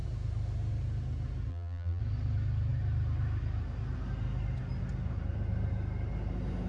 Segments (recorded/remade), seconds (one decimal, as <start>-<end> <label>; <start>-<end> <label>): 0.0-1.5 recorded; 1.5-2.0 remade; 2.0-6.7 recorded